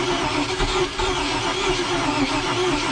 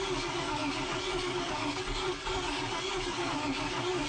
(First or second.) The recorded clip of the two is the first